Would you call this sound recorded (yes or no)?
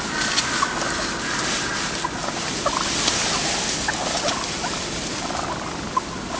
yes